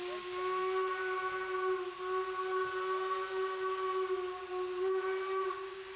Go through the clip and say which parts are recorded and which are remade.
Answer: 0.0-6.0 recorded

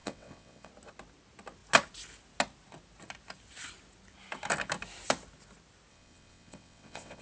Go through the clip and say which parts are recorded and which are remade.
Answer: 0.0-0.7 remade; 0.7-5.9 recorded; 5.9-7.2 remade